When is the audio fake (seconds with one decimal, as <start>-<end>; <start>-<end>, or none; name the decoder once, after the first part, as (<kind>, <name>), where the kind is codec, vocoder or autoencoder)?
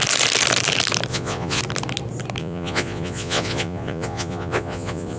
1.1-1.6 (vocoder, Vocos); 2.4-5.2